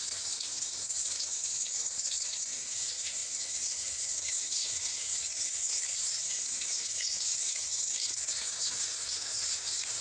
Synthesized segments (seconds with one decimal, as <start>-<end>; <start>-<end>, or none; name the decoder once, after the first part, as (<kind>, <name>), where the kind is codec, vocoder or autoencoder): 0.0-10.0 (codec, SNAC)